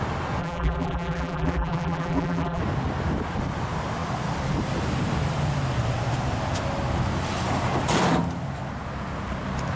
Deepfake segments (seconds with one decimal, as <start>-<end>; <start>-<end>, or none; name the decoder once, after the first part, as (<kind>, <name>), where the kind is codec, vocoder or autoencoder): 0.4-2.6 (vocoder, BigVGAN v2)